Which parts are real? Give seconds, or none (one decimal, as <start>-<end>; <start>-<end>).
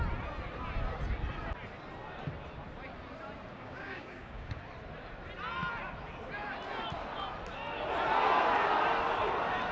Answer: 0.0-3.5; 4.6-9.7